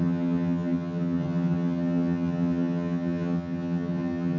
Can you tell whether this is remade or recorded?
remade